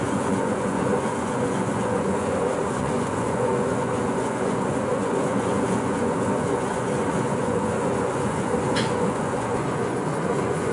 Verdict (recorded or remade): remade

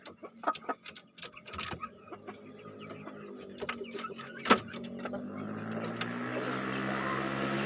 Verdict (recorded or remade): recorded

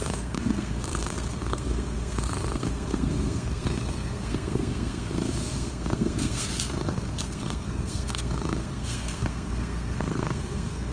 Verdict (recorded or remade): remade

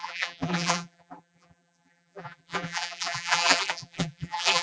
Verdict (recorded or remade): remade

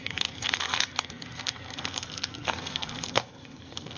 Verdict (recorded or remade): remade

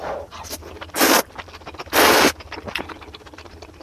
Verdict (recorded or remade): recorded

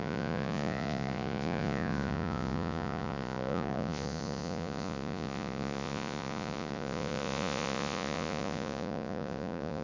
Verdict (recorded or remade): remade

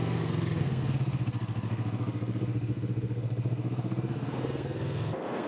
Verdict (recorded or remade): remade